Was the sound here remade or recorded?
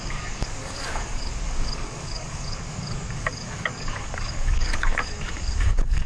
remade